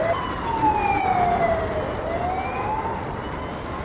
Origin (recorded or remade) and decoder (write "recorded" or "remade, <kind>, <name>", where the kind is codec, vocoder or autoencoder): recorded